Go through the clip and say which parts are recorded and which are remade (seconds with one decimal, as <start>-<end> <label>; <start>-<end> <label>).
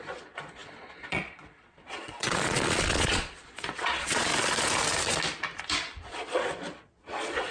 0.0-4.3 remade; 4.3-6.0 recorded; 6.0-7.5 remade